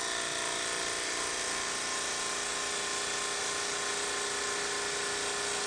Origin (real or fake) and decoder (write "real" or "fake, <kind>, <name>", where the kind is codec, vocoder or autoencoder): real